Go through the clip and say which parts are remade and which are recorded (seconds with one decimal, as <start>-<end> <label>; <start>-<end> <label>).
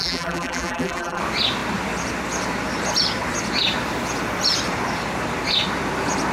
0.0-1.2 remade; 1.2-6.3 recorded